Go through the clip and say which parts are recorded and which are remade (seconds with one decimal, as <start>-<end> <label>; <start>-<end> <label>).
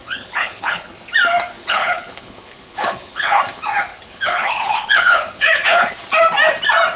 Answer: 0.0-0.9 remade; 0.9-1.6 recorded; 1.6-3.4 remade; 3.4-3.9 recorded; 3.9-5.9 remade; 5.9-7.0 recorded